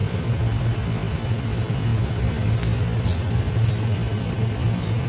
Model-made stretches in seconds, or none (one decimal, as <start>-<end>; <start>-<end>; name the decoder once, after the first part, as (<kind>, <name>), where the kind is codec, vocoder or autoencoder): none